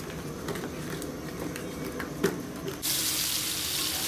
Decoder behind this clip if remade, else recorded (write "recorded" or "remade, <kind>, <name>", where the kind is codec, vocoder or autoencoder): recorded